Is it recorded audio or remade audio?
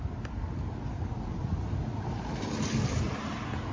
recorded